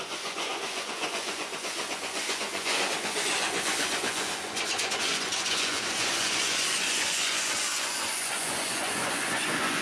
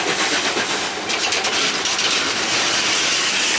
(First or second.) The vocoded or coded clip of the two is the first